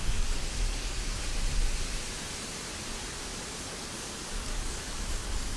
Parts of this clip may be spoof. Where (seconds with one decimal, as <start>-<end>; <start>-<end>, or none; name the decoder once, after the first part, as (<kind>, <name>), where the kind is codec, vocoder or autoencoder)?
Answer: 0.0-1.3 (codec, DAC); 3.7-5.6